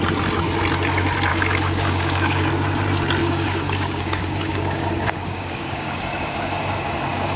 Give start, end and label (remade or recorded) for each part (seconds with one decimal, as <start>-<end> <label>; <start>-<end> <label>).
0.0-1.3 recorded; 1.3-2.5 remade; 2.5-3.2 recorded; 3.2-6.3 remade; 6.3-7.4 recorded